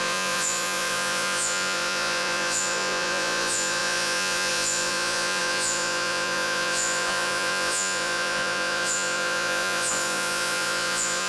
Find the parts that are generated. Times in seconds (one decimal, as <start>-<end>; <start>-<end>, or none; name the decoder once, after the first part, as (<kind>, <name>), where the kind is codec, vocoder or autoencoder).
0.0-11.3 (vocoder, Vocos)